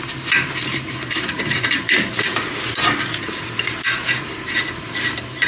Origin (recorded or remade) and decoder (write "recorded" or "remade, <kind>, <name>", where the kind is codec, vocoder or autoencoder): remade, vocoder, BigVGAN v2